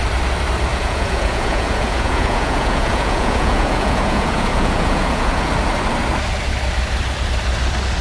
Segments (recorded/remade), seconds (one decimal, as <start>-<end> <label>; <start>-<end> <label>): 0.0-0.7 recorded; 0.7-5.5 remade; 5.5-8.0 recorded